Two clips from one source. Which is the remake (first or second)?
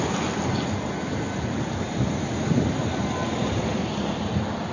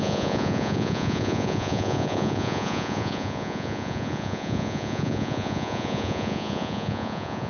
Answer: second